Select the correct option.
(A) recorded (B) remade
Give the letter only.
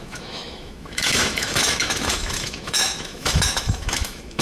B